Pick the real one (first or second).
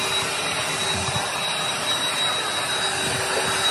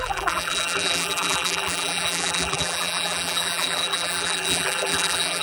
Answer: first